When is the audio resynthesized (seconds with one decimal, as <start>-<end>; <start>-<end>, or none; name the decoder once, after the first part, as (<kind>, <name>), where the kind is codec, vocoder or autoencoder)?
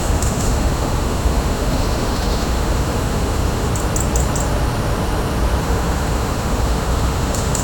0.0-3.7 (autoencoder, DAC-VAE); 5.6-7.6